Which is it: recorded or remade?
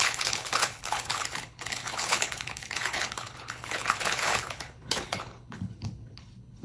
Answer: remade